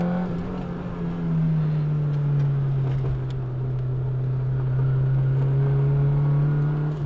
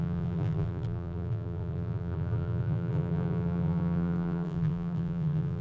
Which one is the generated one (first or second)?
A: second